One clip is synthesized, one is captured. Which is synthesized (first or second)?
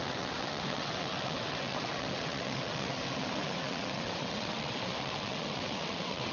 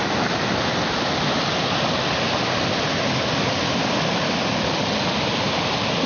first